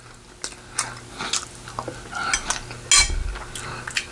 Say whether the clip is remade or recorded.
recorded